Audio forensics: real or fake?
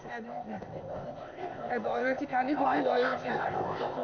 fake